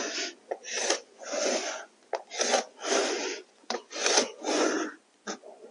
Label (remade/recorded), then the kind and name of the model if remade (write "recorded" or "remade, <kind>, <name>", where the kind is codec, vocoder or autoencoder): remade, vocoder, Vocos